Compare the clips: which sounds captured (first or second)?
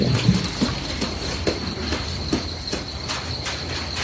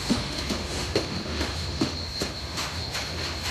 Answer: first